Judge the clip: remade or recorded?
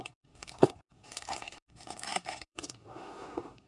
remade